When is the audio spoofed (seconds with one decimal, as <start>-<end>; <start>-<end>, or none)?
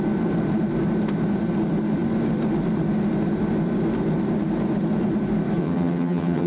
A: 5.6-6.5